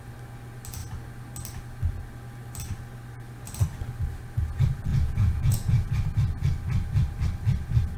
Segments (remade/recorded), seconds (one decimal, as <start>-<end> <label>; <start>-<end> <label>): 0.0-4.9 recorded; 4.9-5.9 remade; 5.9-8.0 recorded